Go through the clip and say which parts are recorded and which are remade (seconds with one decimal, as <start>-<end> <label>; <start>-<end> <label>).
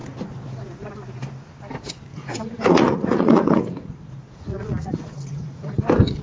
0.0-2.1 recorded; 2.1-5.8 remade; 5.8-6.2 recorded